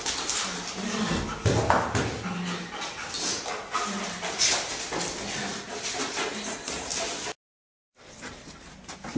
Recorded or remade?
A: recorded